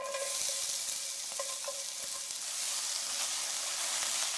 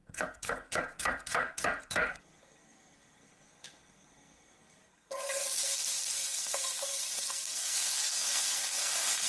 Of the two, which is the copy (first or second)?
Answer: second